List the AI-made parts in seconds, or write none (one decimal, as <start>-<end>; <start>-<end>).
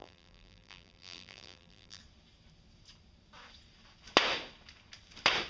0.0-2.0